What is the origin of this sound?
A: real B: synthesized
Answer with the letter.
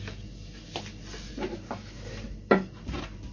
A